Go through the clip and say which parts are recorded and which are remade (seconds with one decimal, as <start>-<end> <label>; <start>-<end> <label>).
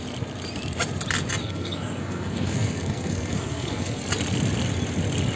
0.0-1.4 recorded; 1.4-4.0 remade; 4.0-5.4 recorded